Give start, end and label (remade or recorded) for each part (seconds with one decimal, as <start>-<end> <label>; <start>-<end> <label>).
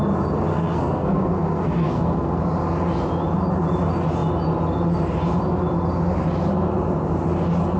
0.0-0.5 recorded; 0.5-2.4 remade; 2.4-7.8 recorded